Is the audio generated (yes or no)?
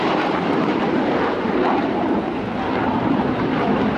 yes